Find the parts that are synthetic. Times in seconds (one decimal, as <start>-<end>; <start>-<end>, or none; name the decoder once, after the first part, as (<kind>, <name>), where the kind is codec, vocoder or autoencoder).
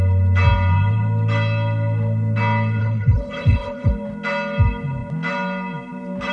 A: 2.8-3.9 (codec, HILCodec)